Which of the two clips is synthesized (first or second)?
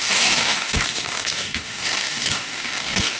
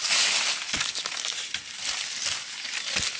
first